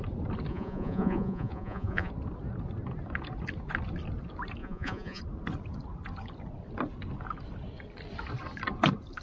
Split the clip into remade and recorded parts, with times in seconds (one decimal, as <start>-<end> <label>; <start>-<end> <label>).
0.0-0.5 recorded; 0.5-2.1 remade; 2.1-4.6 recorded; 4.6-5.2 remade; 5.2-9.2 recorded